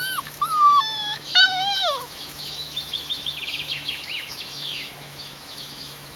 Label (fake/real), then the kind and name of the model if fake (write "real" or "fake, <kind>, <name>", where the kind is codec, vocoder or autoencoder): fake, autoencoder, DAC-VAE